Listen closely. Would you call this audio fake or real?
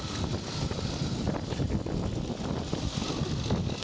real